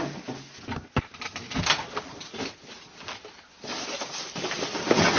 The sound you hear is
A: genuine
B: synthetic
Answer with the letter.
A